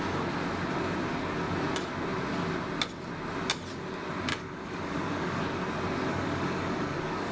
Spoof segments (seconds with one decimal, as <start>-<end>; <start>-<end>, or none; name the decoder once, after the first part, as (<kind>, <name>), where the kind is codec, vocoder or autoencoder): 4.3-5.4 (codec, DAC); 6.1-7.3